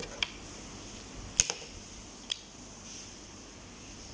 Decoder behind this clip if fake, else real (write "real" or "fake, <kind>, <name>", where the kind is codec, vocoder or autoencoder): real